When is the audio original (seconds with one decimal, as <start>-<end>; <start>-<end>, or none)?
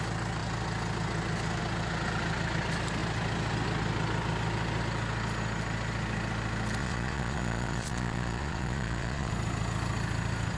0.0-6.8; 9.3-10.6